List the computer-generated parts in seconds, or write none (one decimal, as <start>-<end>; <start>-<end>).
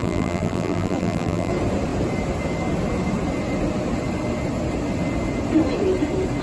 0.0-1.5